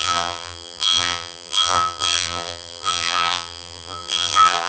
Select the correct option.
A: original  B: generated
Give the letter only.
B